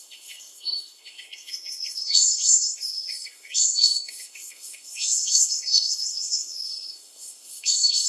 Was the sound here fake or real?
fake